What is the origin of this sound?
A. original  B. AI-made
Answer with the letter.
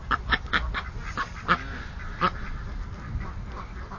A